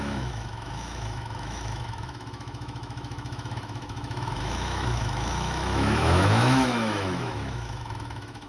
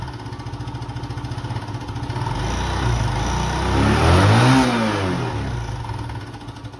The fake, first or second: first